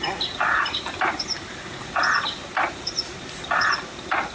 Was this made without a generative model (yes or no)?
yes